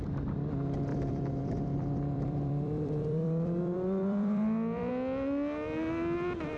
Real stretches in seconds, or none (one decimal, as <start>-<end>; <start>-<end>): 0.0-0.9; 4.9-6.6